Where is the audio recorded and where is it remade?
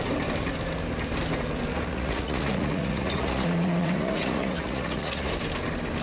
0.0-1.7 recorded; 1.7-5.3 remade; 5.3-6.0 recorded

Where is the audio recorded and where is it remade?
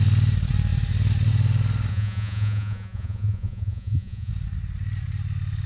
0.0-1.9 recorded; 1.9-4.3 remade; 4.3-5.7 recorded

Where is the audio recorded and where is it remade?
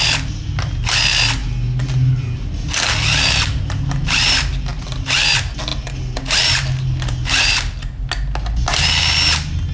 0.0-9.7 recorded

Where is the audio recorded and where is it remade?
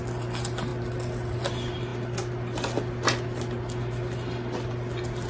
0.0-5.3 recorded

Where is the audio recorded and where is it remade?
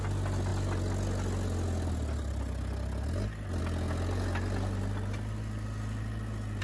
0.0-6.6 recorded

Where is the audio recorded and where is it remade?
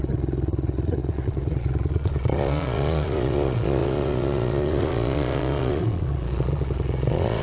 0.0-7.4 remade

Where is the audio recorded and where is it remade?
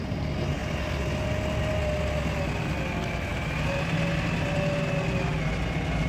0.0-6.1 recorded